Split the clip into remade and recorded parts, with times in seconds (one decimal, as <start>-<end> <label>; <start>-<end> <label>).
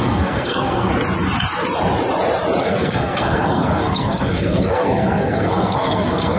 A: 0.0-0.9 remade; 0.9-2.6 recorded; 2.6-6.4 remade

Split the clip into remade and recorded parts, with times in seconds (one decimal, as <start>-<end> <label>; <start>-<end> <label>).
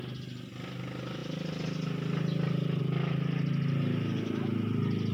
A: 0.0-5.1 recorded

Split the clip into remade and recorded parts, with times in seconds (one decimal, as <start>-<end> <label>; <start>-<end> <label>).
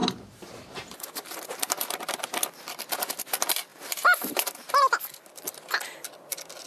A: 0.0-1.9 remade; 1.9-3.7 recorded; 3.7-4.7 remade; 4.7-6.7 recorded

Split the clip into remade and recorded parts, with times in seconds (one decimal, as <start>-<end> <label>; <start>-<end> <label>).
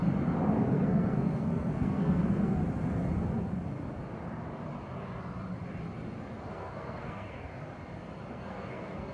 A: 0.0-0.7 recorded; 0.7-2.6 remade; 2.6-6.5 recorded; 6.5-7.5 remade; 7.5-8.3 recorded; 8.3-9.1 remade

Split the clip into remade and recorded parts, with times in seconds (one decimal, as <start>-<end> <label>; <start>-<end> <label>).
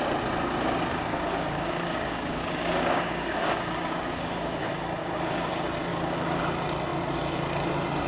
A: 0.0-0.9 recorded; 0.9-4.6 remade; 4.6-5.0 recorded; 5.0-5.5 remade; 5.5-5.9 recorded; 5.9-6.4 remade; 6.4-8.1 recorded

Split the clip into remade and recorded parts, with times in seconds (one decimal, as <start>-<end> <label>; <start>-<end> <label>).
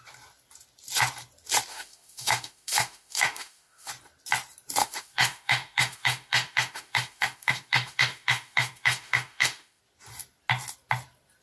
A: 0.0-1.7 recorded; 1.7-3.9 remade; 3.9-4.8 recorded; 4.8-9.8 remade; 9.8-11.4 recorded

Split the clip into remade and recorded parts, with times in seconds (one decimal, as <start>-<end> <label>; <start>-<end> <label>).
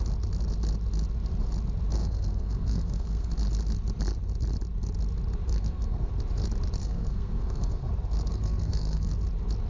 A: 0.0-2.0 recorded; 2.0-3.3 remade; 3.3-5.5 recorded; 5.5-6.1 remade; 6.1-6.8 recorded; 6.8-7.9 remade; 7.9-8.3 recorded; 8.3-9.1 remade; 9.1-9.7 recorded